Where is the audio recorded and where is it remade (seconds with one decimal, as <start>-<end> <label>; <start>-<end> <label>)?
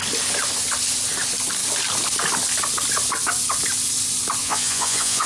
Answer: 0.0-4.4 recorded; 4.4-5.3 remade